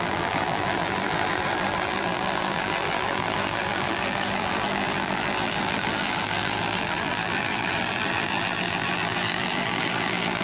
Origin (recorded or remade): remade